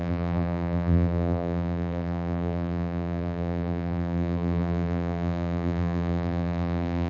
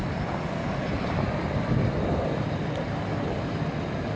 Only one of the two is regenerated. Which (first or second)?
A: first